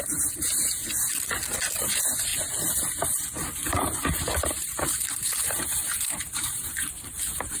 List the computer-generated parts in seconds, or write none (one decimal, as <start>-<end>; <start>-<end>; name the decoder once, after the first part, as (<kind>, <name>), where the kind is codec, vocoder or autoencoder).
0.0-0.8 (vocoder, BigVGAN v2); 1.8-2.3; 3.1-7.6